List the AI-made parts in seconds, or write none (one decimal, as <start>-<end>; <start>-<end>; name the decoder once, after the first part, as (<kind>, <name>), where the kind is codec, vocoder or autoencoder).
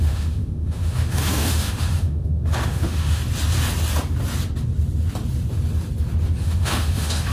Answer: 0.0-3.2 (autoencoder, DAC-VAE); 6.4-7.3